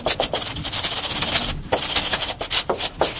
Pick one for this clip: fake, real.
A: real